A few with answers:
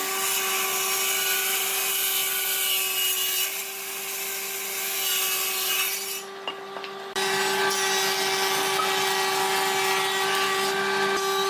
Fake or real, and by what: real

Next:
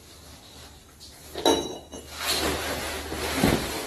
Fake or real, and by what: real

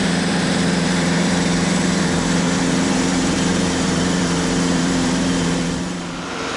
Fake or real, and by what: fake, vocoder, BigVGAN v2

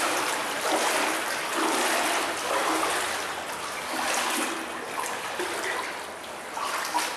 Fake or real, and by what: real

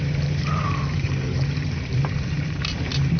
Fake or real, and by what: fake, vocoder, BigVGAN v2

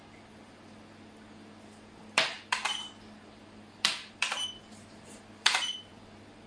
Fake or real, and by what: fake, vocoder, BigVGAN v2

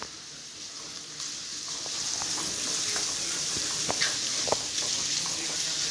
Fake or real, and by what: real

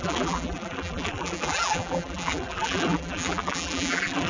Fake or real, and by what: fake, vocoder, BigVGAN v2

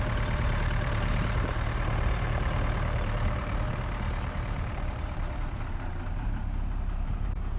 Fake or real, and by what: fake, vocoder, BigVGAN v2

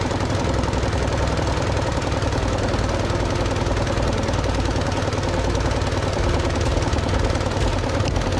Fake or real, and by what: real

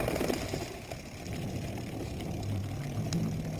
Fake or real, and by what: real